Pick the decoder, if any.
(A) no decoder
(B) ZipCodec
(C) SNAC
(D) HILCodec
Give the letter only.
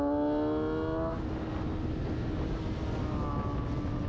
A